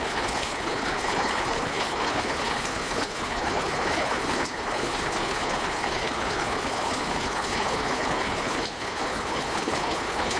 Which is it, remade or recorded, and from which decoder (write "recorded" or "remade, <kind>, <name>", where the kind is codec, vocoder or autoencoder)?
remade, codec, HILCodec